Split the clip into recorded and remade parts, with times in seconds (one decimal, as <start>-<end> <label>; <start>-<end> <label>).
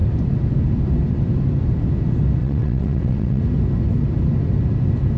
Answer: 0.0-2.4 recorded; 2.4-3.4 remade; 3.4-5.2 recorded